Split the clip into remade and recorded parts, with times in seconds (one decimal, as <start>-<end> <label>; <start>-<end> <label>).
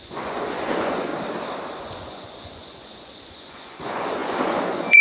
0.0-1.1 remade; 1.1-1.8 recorded; 1.8-5.0 remade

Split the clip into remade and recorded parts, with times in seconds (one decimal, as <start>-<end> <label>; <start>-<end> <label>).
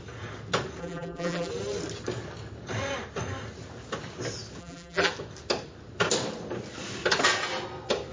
0.0-0.8 recorded; 0.8-1.5 remade; 1.5-4.6 recorded; 4.6-5.1 remade; 5.1-8.1 recorded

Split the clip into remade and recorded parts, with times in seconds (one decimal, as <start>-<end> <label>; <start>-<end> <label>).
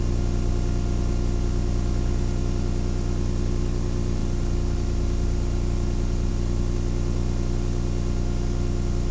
0.0-9.1 recorded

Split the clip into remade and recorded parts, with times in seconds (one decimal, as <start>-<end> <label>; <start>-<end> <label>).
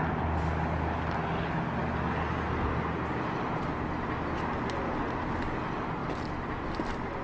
0.0-7.2 recorded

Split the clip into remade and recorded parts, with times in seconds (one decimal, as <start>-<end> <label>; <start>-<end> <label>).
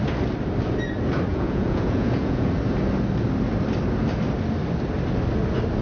0.0-1.3 recorded; 1.3-2.5 remade; 2.5-5.8 recorded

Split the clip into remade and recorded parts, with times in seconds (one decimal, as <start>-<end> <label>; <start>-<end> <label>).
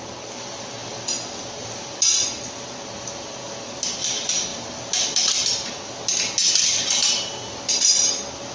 0.0-8.5 recorded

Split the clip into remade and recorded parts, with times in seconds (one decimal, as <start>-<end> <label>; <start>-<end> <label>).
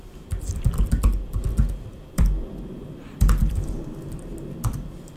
0.0-1.4 remade; 1.4-2.1 recorded; 2.1-5.2 remade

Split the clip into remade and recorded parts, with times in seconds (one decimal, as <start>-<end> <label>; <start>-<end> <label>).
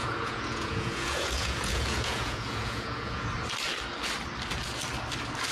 0.0-3.3 remade; 3.3-5.5 recorded